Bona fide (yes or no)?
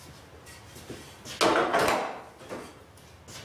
yes